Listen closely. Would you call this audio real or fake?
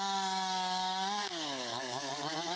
fake